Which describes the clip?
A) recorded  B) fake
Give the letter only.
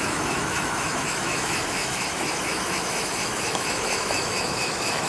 B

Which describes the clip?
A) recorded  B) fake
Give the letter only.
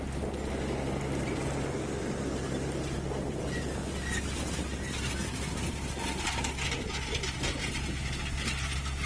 A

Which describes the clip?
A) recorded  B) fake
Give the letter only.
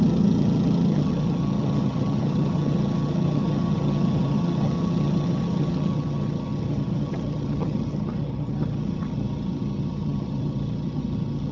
B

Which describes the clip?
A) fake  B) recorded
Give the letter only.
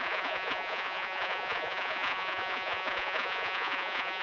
A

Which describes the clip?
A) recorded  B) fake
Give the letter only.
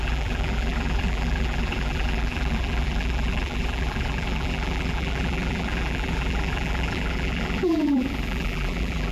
B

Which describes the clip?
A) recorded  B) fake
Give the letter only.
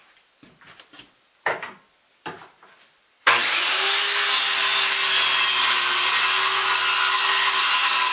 A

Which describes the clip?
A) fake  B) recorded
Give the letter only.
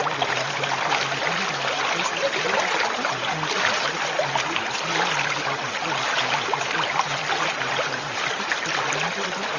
B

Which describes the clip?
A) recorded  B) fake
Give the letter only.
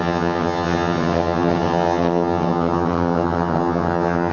B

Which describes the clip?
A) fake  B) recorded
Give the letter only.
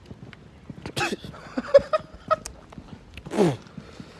B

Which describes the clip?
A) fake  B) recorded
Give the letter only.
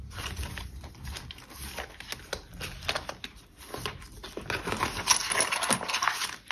B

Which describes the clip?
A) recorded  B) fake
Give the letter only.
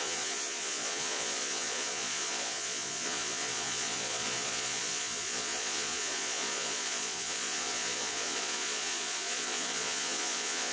B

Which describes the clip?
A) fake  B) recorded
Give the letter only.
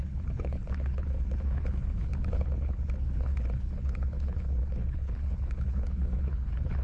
A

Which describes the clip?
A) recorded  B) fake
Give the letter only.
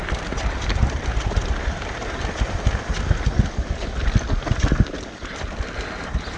A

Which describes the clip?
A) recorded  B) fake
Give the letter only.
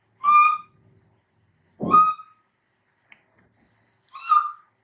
A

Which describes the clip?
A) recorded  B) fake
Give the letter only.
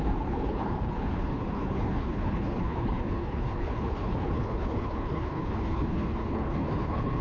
B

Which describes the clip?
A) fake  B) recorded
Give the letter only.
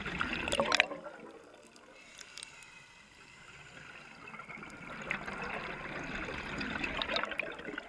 B